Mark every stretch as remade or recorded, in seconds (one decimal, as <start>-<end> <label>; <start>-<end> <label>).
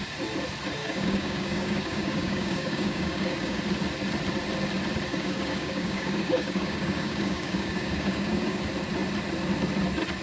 0.0-0.8 recorded; 0.8-3.6 remade; 3.6-5.1 recorded; 5.1-8.6 remade; 8.6-10.2 recorded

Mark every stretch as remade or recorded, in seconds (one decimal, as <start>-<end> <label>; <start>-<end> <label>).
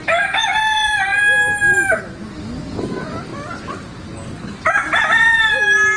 0.0-6.0 recorded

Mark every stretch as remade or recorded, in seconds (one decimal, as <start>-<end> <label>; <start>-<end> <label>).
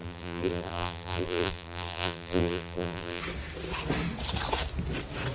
0.0-3.2 remade; 3.2-5.3 recorded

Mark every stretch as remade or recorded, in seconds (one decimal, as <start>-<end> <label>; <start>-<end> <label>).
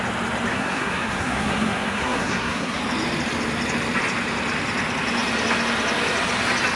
0.0-0.5 recorded; 0.5-2.8 remade; 2.8-6.8 recorded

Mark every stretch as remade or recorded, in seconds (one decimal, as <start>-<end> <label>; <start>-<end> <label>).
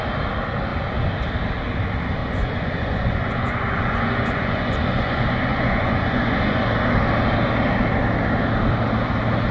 0.0-2.2 recorded; 2.2-6.7 remade; 6.7-9.5 recorded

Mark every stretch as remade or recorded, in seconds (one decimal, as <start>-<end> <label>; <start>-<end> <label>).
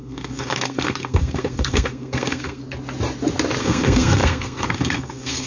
0.0-2.6 remade; 2.6-3.6 recorded; 3.6-5.5 remade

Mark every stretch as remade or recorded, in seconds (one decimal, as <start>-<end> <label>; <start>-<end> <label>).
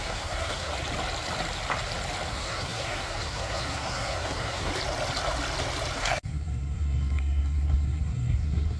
0.0-0.7 remade; 0.7-2.3 recorded; 2.3-4.7 remade; 4.7-6.0 recorded; 6.0-8.8 remade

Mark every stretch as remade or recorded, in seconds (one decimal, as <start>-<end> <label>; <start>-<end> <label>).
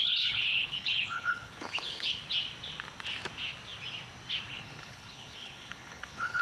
0.0-2.2 remade; 2.2-4.5 recorded; 4.5-6.4 remade